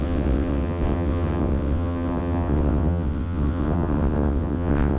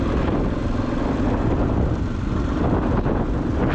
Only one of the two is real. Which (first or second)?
second